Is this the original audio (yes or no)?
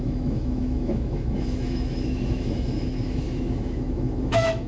no